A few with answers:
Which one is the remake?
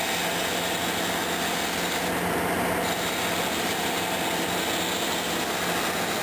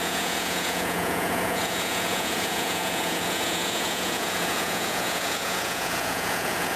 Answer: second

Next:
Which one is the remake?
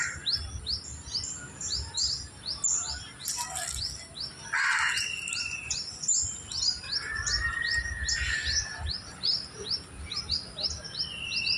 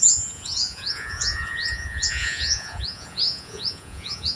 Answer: second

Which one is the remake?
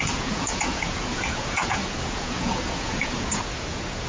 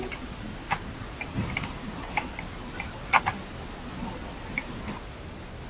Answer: first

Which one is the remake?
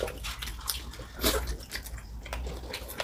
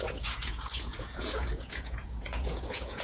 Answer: second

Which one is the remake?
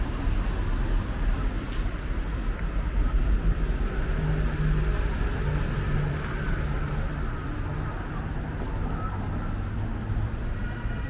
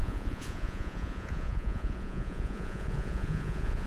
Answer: second